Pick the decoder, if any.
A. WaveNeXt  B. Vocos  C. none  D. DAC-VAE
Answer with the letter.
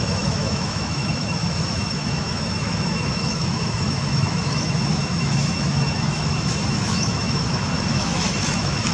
D